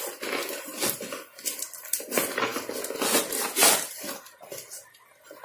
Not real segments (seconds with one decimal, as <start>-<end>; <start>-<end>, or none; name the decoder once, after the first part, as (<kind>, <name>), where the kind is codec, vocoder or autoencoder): none